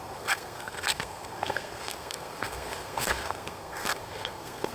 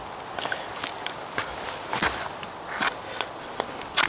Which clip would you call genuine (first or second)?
second